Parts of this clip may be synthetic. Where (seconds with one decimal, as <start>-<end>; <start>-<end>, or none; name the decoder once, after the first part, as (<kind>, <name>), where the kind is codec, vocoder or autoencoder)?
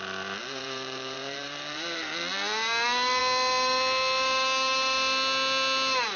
0.4-2.1 (vocoder, BigVGAN v2)